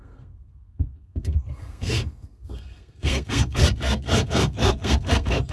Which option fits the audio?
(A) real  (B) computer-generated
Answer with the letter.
B